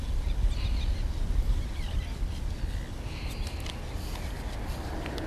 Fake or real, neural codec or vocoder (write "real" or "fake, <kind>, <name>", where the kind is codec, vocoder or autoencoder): real